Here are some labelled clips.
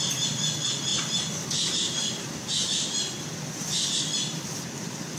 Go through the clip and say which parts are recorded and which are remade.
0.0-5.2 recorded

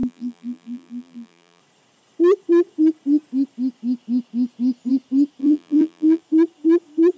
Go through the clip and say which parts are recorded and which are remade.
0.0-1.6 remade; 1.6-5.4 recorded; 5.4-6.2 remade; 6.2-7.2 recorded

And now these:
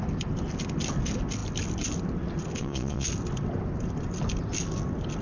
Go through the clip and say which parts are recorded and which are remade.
0.0-2.6 recorded; 2.6-3.1 remade; 3.1-5.2 recorded

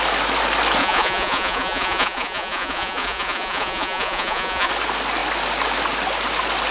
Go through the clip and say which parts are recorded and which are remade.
0.0-0.8 recorded; 0.8-4.7 remade; 4.7-6.7 recorded

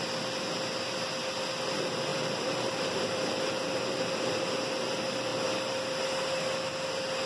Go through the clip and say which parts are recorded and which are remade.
0.0-2.1 recorded; 2.1-4.6 remade; 4.6-7.3 recorded

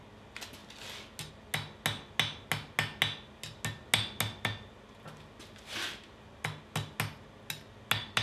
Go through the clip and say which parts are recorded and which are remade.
0.0-8.2 recorded

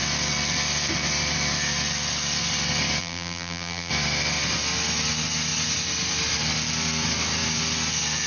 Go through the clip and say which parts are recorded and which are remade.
0.0-3.0 recorded; 3.0-3.9 remade; 3.9-8.3 recorded

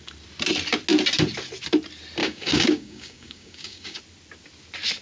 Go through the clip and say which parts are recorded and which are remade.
0.0-2.2 recorded; 2.2-4.0 remade; 4.0-5.0 recorded